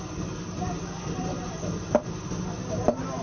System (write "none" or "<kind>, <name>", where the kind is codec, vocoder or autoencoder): none